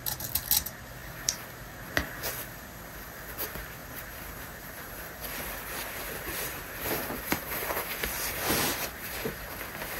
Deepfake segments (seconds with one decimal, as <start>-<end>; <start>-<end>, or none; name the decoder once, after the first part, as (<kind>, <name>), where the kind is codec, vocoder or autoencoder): 3.8-5.0 (vocoder, BigVGAN v2); 5.8-9.3